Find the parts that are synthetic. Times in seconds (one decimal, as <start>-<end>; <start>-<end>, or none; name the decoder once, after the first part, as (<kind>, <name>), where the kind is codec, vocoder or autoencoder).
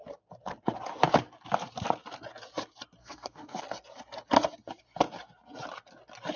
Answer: 3.0-3.6 (codec, SNAC)